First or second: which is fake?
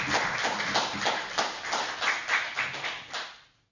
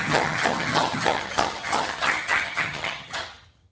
second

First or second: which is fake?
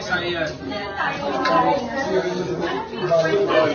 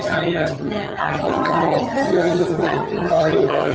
second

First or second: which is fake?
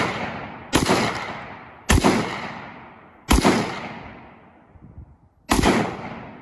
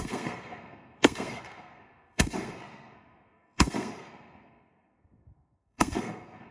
second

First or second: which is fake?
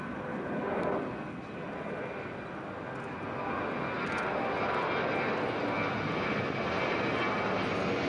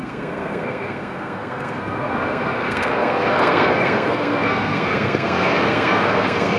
second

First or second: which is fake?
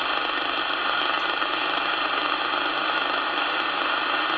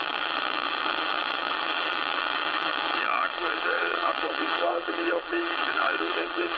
second